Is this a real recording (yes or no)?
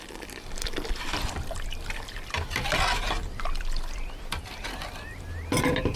no